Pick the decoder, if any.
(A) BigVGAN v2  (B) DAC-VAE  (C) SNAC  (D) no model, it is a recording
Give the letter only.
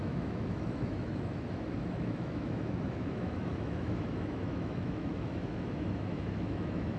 B